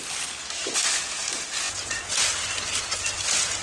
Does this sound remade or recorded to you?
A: recorded